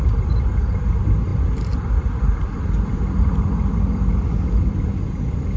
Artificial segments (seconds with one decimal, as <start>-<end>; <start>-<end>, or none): none